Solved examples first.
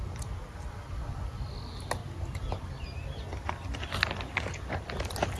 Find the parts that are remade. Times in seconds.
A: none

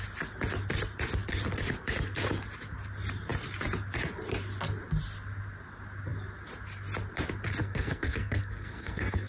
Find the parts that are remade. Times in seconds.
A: 7.6-9.3

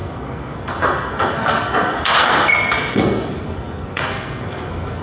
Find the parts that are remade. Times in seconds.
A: 0.0-5.0

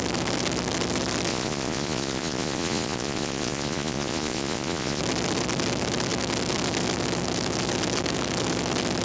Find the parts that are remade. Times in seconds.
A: 1.3-5.0